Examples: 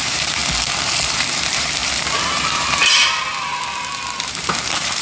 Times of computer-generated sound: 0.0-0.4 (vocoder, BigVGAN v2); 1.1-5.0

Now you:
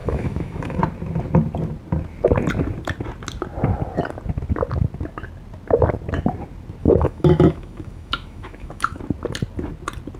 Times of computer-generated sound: 0.0-0.8 (autoencoder, DAC-VAE); 6.8-9.0

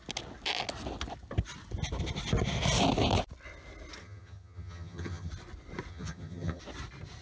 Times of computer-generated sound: 4.0-5.3 (vocoder, HiFi-GAN); 5.9-6.6

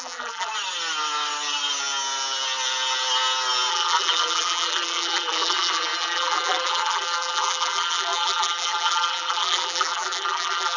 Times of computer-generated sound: 0.0-0.5 (vocoder, BigVGAN v2); 3.7-10.8